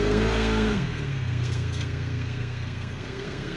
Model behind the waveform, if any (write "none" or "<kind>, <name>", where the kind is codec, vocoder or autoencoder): codec, SNAC